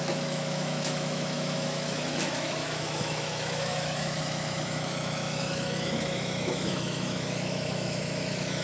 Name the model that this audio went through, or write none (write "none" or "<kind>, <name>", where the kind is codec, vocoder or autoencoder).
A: autoencoder, DAC-VAE